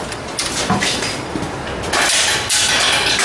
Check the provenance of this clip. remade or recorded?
recorded